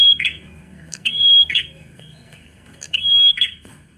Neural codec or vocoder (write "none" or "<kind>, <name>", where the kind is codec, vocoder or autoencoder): codec, SNAC